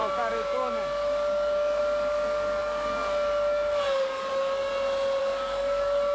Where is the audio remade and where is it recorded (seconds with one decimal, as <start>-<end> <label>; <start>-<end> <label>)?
0.0-4.7 remade; 4.7-5.2 recorded; 5.2-6.1 remade